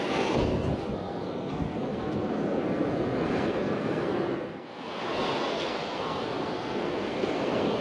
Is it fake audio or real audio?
fake